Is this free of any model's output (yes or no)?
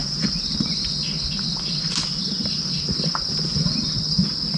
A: yes